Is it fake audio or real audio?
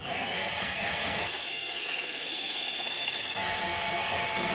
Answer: fake